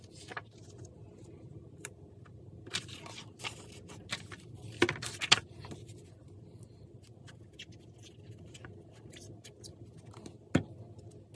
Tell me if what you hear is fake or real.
real